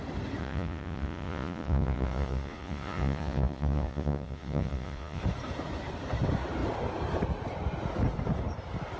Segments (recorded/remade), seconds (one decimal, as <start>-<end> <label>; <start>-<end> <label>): 0.0-0.4 recorded; 0.4-5.2 remade; 5.2-9.0 recorded